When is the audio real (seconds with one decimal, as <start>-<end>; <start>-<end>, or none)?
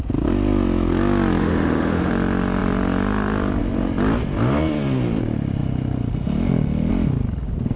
0.0-1.4; 2.1-7.8